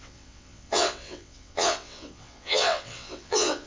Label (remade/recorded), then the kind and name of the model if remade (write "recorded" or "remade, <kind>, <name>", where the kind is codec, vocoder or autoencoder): remade, vocoder, WaveNeXt